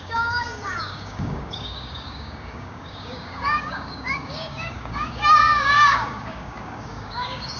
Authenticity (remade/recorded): remade